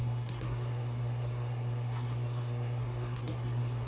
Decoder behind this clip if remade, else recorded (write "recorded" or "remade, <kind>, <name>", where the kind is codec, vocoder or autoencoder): remade, codec, SNAC